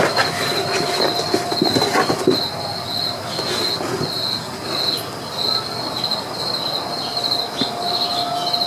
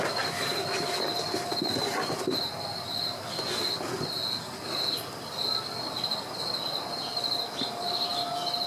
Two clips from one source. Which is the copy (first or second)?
second